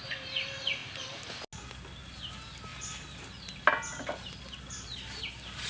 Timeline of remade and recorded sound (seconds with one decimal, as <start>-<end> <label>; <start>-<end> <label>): 0.0-5.7 recorded